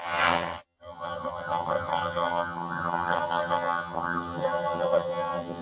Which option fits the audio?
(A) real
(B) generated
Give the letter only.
B